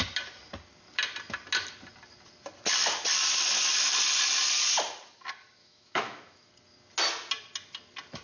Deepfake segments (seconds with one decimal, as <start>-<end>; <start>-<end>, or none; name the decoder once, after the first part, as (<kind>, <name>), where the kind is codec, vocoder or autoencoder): 5.6-6.5 (autoencoder, DAC-VAE)